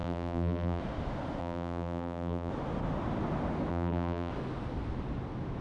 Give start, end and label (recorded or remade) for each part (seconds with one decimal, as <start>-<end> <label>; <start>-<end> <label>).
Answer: 0.0-0.8 remade; 0.8-1.4 recorded; 1.4-2.5 remade; 2.5-3.7 recorded; 3.7-4.3 remade; 4.3-5.6 recorded